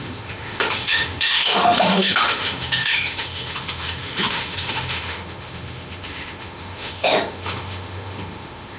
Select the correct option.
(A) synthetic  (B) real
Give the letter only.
A